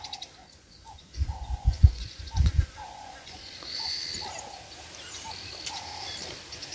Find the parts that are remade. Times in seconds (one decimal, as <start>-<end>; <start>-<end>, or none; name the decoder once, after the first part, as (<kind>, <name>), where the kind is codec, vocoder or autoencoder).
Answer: 0.4-4.0 (vocoder, Vocos)

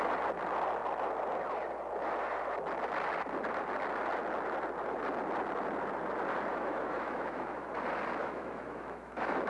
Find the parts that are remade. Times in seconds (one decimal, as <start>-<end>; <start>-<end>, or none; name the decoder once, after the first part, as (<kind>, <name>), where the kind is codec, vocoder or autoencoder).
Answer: 6.5-7.7 (autoencoder, DAC-VAE); 8.2-9.5

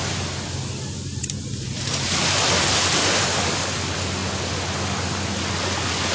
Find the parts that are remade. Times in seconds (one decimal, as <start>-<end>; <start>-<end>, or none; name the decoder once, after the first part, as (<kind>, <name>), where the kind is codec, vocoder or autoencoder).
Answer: 1.2-2.4 (vocoder, BigVGAN v2); 3.0-3.8

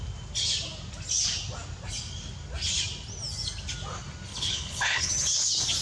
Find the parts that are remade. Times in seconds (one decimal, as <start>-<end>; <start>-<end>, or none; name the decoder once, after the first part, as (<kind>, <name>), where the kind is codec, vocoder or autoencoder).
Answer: 4.3-5.1 (codec, HILCodec)

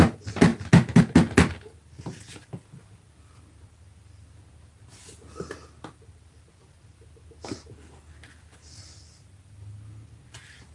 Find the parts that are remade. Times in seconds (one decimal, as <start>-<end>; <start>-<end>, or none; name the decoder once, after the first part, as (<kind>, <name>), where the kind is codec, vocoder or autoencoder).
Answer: none

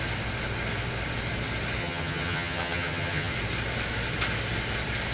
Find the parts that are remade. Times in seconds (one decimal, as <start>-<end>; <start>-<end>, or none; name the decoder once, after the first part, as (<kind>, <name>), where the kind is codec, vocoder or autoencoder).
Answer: 1.8-3.3 (vocoder, HiFi-GAN)

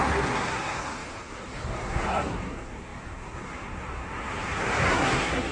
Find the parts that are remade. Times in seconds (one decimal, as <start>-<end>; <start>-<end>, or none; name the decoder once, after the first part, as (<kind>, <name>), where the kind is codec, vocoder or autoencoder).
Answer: 0.0-5.5 (codec, SNAC)